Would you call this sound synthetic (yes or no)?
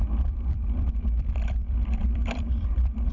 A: yes